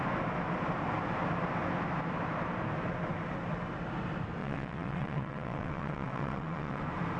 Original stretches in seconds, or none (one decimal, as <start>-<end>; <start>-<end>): 0.0-4.4; 6.8-7.2